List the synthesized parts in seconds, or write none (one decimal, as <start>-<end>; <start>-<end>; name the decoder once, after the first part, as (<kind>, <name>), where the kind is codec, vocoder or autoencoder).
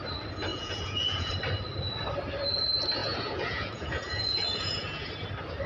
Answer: 0.5-1.3 (vocoder, Vocos); 3.0-5.1